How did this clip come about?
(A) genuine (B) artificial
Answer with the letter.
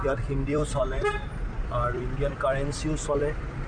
B